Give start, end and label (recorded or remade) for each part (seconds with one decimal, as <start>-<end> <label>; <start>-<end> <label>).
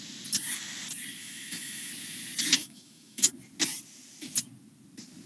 0.0-1.2 recorded; 1.2-1.9 remade; 1.9-2.6 recorded; 2.6-3.3 remade; 3.3-5.3 recorded